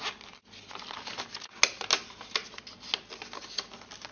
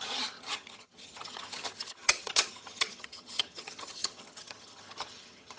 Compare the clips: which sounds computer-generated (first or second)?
second